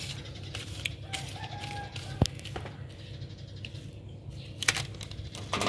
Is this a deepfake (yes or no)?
no